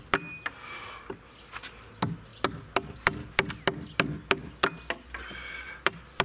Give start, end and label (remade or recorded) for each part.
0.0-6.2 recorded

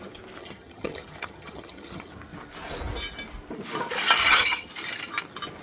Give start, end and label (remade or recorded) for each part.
0.0-0.4 recorded; 0.4-2.1 remade; 2.1-4.2 recorded; 4.2-4.7 remade; 4.7-5.6 recorded